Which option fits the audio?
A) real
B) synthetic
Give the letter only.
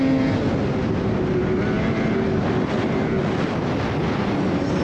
A